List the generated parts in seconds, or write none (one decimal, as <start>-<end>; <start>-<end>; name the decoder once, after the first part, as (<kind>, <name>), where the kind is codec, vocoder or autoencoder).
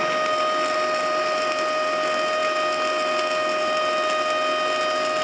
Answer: none